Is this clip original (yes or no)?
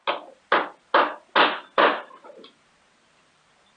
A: yes